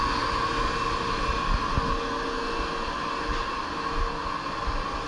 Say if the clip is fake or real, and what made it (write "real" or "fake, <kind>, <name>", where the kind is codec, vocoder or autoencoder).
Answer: real